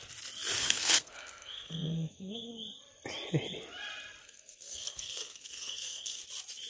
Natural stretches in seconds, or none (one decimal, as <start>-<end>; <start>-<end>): 0.0-0.6; 2.5-4.2; 6.2-6.7